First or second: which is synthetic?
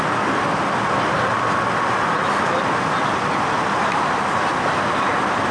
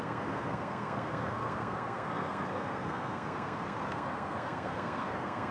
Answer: second